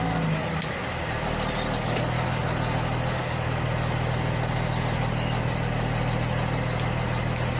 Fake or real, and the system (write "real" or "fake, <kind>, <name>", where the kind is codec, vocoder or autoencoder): real